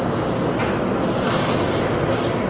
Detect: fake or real real